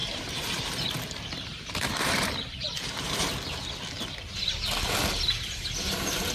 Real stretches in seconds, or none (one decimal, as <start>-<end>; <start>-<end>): 3.3-6.3